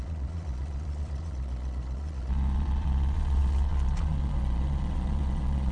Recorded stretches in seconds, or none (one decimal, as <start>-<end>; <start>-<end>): none